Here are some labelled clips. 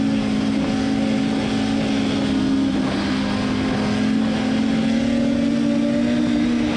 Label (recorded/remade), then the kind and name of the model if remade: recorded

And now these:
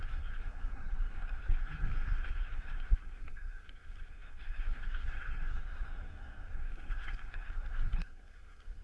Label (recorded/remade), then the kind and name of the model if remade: remade, codec, SNAC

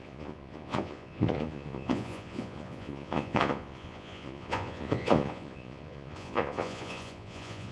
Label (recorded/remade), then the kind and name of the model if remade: remade, vocoder, Vocos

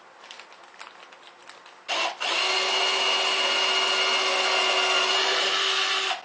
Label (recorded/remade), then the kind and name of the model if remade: recorded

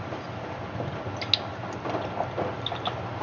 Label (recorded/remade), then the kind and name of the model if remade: recorded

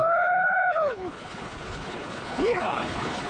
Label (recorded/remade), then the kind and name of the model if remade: remade, codec, HILCodec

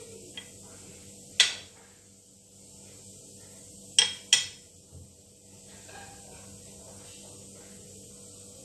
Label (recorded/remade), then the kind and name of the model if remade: recorded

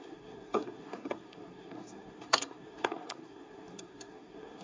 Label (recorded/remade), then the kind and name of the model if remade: remade, codec, SNAC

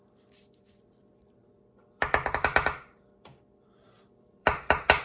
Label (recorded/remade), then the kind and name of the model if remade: remade, vocoder, BigVGAN v2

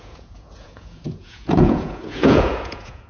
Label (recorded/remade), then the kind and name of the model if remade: remade, vocoder, Vocos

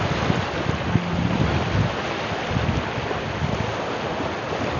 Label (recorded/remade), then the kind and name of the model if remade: recorded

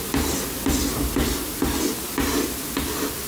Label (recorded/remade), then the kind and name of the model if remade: recorded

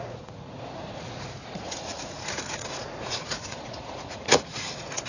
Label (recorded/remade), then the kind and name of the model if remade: remade, vocoder, Vocos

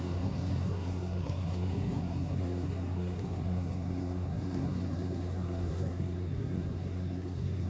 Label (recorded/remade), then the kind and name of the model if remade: remade, codec, SNAC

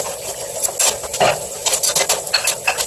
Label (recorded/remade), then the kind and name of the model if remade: recorded